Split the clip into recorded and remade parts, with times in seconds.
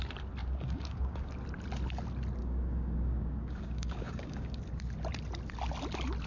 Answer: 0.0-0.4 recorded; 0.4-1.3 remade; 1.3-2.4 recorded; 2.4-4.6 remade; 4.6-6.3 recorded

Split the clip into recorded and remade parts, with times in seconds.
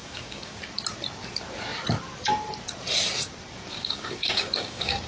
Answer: 0.0-0.6 remade; 0.6-3.7 recorded; 3.7-5.1 remade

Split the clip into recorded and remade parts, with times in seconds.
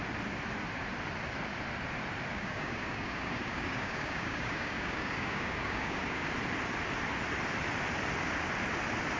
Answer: 0.0-2.3 recorded; 2.3-6.3 remade; 6.3-9.2 recorded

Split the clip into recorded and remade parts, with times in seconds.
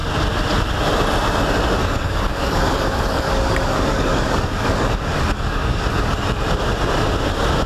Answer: 0.0-1.8 recorded; 1.8-6.4 remade; 6.4-7.7 recorded